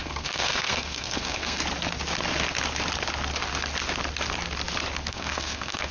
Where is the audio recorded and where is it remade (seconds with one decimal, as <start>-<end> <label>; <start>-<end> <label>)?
0.0-1.6 remade; 1.6-5.1 recorded; 5.1-5.9 remade